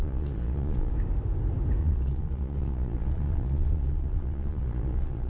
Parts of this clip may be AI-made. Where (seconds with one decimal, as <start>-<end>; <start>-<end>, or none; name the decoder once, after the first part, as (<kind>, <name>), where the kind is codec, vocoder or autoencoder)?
0.0-0.9 (vocoder, Vocos); 1.8-5.3